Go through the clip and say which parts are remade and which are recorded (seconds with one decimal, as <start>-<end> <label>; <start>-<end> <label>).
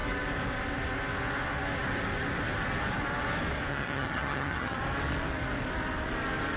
0.0-3.7 recorded; 3.7-4.8 remade; 4.8-6.6 recorded